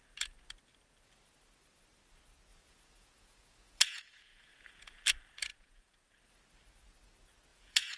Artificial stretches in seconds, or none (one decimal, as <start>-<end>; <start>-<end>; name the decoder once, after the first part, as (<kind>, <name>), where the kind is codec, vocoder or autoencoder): 2.5-5.0 (vocoder, Vocos); 5.5-6.2; 7.5-8.0